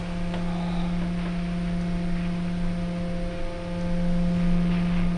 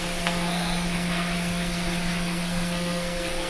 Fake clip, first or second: second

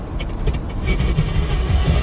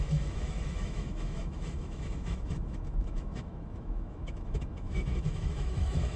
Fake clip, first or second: second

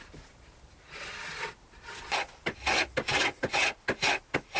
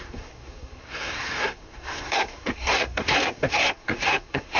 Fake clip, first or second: second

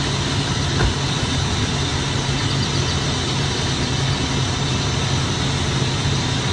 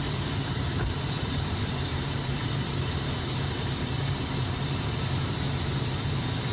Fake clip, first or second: second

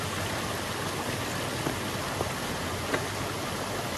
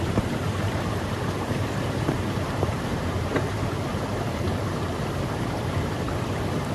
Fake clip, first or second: second